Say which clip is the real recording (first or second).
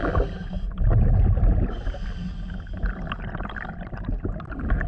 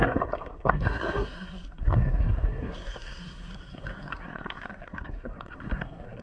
first